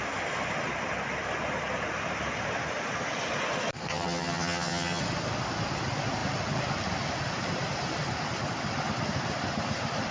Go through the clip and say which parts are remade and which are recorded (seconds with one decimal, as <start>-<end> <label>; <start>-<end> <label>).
0.0-3.9 recorded; 3.9-5.0 remade; 5.0-10.1 recorded